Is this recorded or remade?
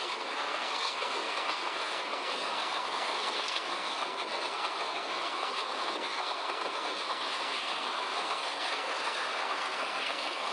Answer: remade